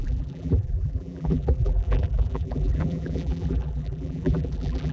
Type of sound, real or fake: fake